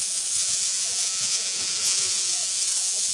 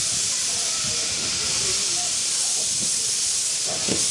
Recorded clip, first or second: second